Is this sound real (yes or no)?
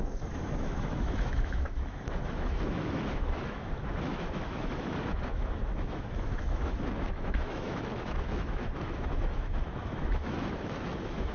no